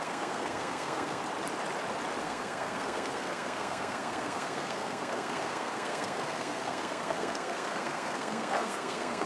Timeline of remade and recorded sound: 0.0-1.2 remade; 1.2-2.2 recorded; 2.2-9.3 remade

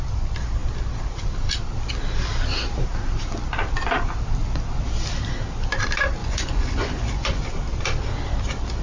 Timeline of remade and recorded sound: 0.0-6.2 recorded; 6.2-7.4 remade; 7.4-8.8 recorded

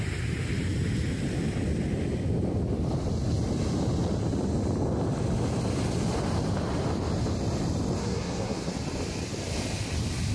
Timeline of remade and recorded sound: 0.0-8.0 recorded; 8.0-8.7 remade; 8.7-10.3 recorded

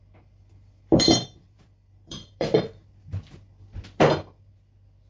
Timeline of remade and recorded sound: 0.0-0.9 recorded; 0.9-2.8 remade; 2.8-5.1 recorded

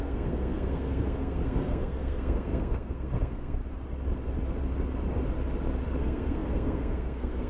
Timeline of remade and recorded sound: 0.0-3.6 remade; 3.6-6.0 recorded; 6.0-7.5 remade

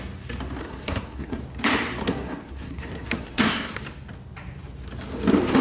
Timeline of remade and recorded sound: 0.0-0.6 recorded; 0.6-1.4 remade; 1.4-2.0 recorded; 2.0-3.8 remade; 3.8-5.6 recorded

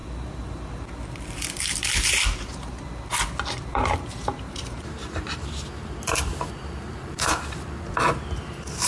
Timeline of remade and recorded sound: 0.0-3.6 recorded; 3.6-5.0 remade; 5.0-6.2 recorded; 6.2-8.9 remade

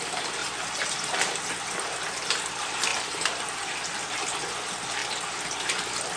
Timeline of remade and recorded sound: 0.0-0.4 recorded; 0.4-1.5 remade; 1.5-2.9 recorded; 2.9-4.0 remade; 4.0-6.2 recorded